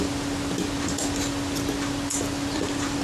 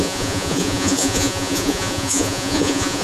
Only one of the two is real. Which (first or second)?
first